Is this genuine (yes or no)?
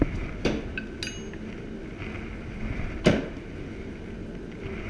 yes